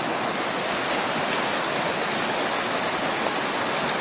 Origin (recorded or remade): recorded